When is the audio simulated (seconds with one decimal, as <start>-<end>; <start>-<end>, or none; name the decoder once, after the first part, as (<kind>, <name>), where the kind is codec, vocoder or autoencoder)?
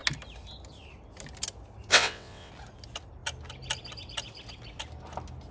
1.9-2.5 (vocoder, WaveNeXt)